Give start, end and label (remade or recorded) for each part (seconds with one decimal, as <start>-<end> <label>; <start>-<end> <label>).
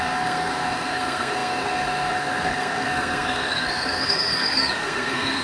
0.0-5.4 remade